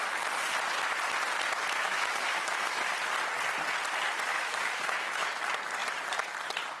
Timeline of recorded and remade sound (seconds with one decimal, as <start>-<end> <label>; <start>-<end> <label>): 0.0-1.8 recorded; 1.8-2.9 remade; 2.9-4.3 recorded; 4.3-5.3 remade; 5.3-6.8 recorded